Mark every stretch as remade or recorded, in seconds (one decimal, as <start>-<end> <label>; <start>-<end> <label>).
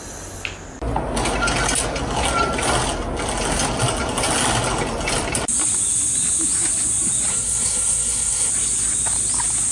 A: 0.0-7.3 recorded; 7.3-8.5 remade; 8.5-9.7 recorded